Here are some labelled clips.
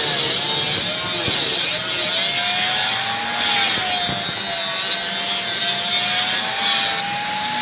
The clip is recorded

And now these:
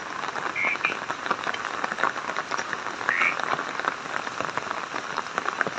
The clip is recorded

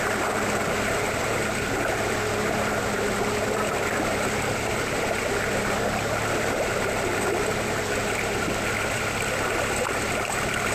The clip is recorded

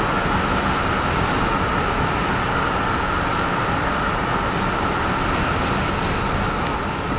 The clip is recorded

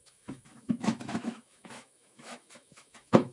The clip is remade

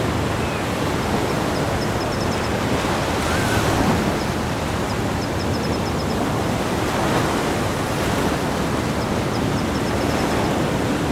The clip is recorded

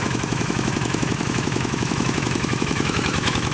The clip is remade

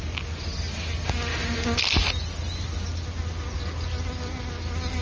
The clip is recorded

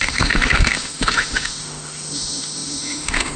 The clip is remade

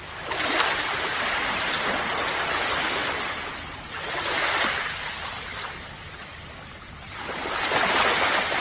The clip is recorded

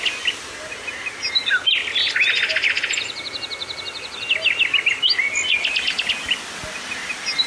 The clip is recorded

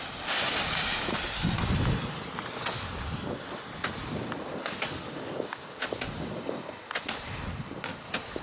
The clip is recorded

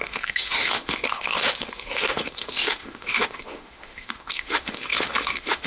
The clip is remade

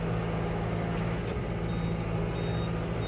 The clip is recorded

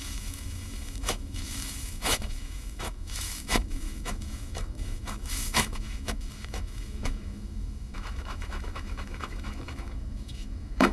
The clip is remade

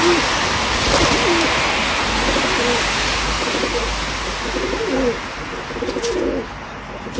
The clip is recorded